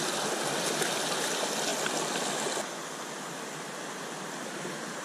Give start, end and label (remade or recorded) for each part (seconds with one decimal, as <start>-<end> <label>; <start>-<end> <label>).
0.0-5.0 recorded